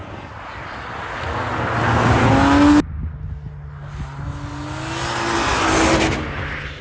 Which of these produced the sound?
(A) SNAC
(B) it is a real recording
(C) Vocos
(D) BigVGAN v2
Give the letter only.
B